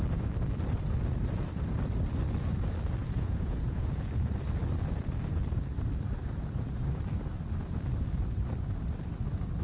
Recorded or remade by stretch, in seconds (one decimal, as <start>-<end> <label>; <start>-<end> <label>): 0.0-3.0 recorded; 3.0-4.1 remade; 4.1-9.6 recorded